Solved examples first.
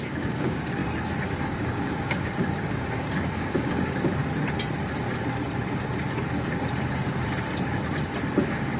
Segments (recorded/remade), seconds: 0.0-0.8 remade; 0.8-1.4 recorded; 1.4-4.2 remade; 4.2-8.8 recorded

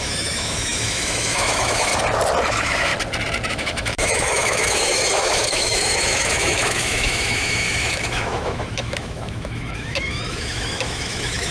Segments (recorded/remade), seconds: 0.0-1.9 remade; 1.9-2.5 recorded; 2.5-2.9 remade; 2.9-3.5 recorded; 3.5-11.5 remade

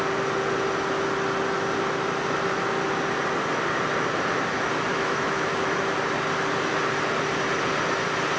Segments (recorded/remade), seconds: 0.0-4.9 recorded; 4.9-5.8 remade; 5.8-8.4 recorded

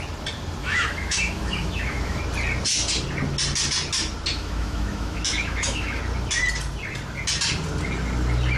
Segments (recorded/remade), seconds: 0.0-0.6 recorded; 0.6-2.2 remade; 2.2-4.3 recorded; 4.3-6.0 remade; 6.0-8.6 recorded

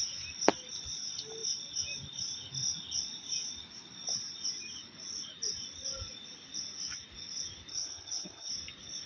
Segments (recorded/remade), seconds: 0.0-7.7 recorded; 7.7-8.5 remade; 8.5-9.1 recorded

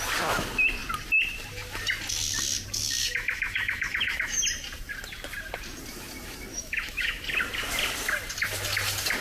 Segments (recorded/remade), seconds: 0.0-3.0 recorded; 3.0-4.4 remade; 4.4-6.5 recorded; 6.5-7.2 remade; 7.2-9.2 recorded

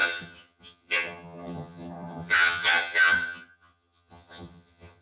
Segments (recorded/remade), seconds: 0.0-5.0 remade

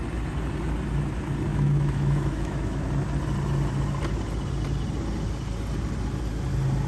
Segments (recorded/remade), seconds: 0.0-1.5 recorded; 1.5-2.9 remade; 2.9-6.9 recorded